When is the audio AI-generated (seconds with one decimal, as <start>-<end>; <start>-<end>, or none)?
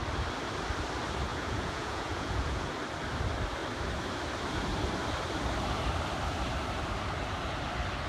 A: 1.3-2.7